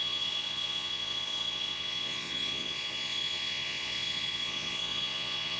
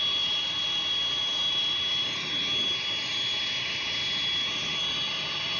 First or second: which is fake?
first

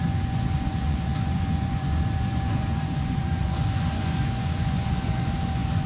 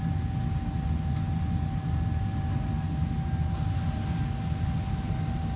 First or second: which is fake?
first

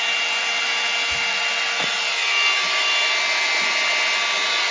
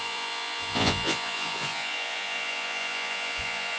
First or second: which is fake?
second